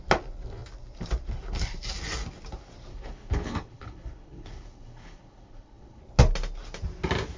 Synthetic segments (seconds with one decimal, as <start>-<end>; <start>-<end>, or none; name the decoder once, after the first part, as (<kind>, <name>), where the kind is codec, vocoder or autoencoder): 2.9-6.0 (codec, HILCodec)